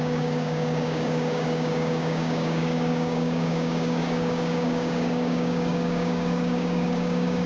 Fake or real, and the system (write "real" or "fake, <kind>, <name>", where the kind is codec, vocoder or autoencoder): fake, codec, DAC